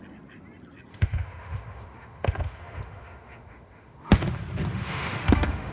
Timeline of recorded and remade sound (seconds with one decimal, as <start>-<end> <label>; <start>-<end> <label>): 0.0-0.9 recorded; 0.9-4.3 remade; 4.3-4.7 recorded; 4.7-5.7 remade